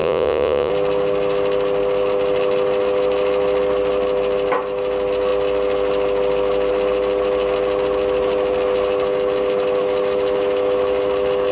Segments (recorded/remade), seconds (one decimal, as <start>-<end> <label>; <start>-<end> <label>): 0.0-0.7 remade; 0.7-11.5 recorded